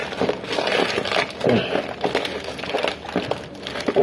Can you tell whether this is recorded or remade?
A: recorded